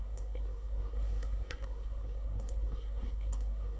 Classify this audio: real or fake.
fake